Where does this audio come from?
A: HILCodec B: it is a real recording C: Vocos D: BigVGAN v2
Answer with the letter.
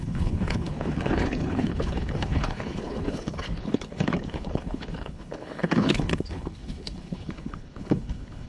A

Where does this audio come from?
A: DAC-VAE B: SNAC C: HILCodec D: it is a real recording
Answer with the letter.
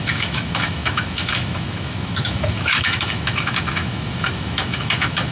A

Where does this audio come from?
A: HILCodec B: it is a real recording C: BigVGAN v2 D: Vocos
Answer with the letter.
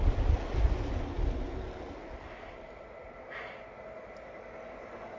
B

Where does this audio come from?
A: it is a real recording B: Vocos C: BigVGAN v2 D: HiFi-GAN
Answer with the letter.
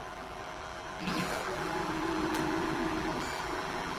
C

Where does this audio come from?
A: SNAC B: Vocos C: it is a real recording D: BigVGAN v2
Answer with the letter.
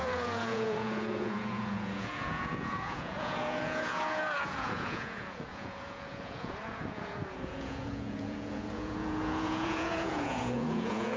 B